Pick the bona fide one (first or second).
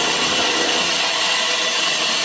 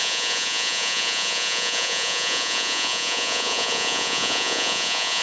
first